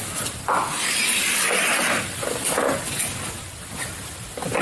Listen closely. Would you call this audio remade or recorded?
recorded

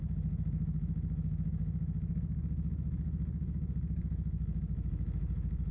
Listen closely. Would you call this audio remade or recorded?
remade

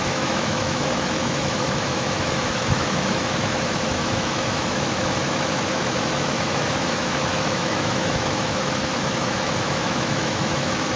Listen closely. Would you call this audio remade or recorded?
remade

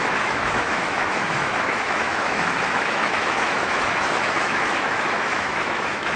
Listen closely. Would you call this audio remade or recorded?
remade